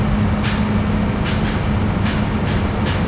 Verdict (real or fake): real